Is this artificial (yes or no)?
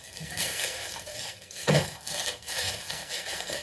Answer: yes